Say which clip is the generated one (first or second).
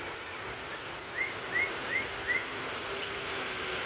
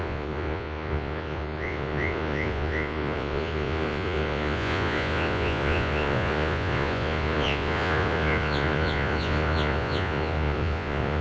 second